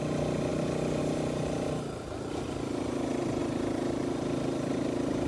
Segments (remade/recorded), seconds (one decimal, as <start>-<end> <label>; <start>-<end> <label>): 0.0-5.3 recorded